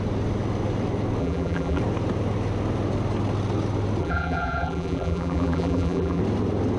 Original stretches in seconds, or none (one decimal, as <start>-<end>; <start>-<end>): 0.0-1.2; 1.8-4.0; 6.2-6.8